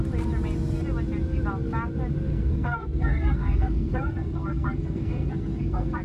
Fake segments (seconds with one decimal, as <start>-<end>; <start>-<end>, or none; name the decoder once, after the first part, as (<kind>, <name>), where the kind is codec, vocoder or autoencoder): 2.3-6.0 (codec, SNAC)